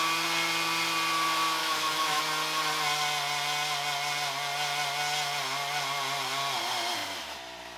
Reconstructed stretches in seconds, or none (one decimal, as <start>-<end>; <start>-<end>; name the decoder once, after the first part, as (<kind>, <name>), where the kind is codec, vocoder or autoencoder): 1.6-2.2 (autoencoder, DAC-VAE)